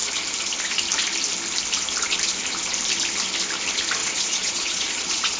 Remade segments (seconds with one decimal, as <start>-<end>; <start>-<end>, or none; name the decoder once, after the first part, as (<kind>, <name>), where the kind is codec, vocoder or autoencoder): 4.0-5.4 (vocoder, Vocos)